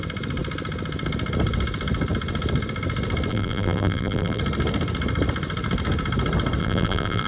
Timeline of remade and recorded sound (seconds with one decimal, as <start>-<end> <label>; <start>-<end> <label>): 0.0-3.3 recorded; 3.3-4.4 remade; 4.4-6.6 recorded; 6.6-7.3 remade